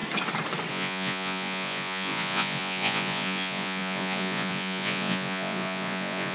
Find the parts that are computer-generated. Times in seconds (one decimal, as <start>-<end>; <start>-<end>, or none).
0.7-6.3